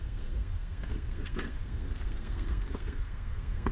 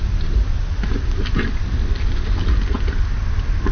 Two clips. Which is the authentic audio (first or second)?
second